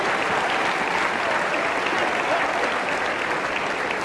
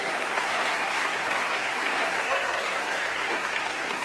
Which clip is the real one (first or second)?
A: first